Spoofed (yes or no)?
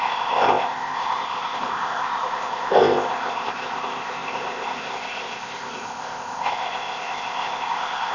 yes